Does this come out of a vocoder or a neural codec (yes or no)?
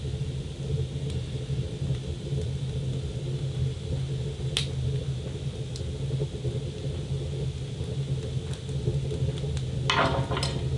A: no